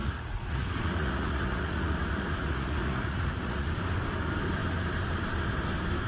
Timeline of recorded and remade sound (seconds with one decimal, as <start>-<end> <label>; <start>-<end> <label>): 0.0-3.7 remade; 3.7-6.1 recorded